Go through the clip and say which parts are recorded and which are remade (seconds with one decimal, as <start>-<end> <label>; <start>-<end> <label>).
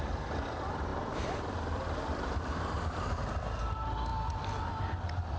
0.0-0.9 recorded; 0.9-3.2 remade; 3.2-5.4 recorded